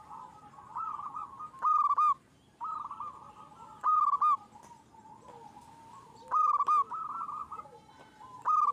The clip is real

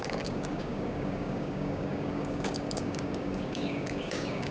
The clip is fake